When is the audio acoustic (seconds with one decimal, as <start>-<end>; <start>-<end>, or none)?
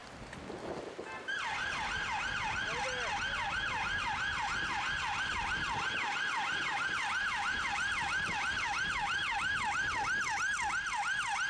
0.0-11.5